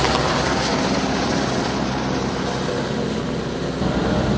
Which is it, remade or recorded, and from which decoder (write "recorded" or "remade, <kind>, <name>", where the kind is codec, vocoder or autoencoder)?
recorded